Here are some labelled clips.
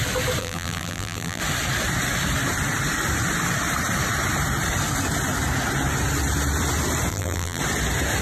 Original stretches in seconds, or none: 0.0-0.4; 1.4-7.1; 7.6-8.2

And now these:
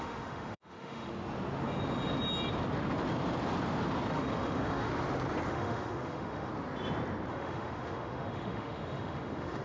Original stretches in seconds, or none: 1.1-4.1; 4.9-5.5; 6.5-7.3

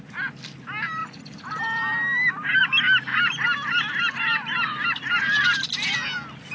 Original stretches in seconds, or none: 0.0-6.5

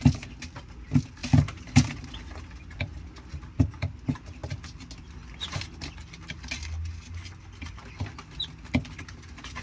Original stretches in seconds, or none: 0.0-9.6

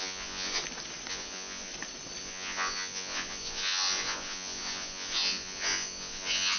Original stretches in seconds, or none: 0.6-1.1; 1.7-2.2

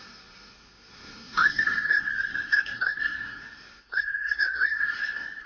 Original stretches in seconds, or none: none